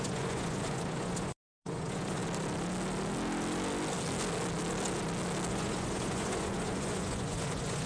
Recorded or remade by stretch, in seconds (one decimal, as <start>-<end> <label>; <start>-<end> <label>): 0.0-2.2 remade; 2.2-5.5 recorded; 5.5-7.9 remade